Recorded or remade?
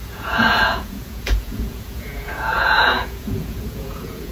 remade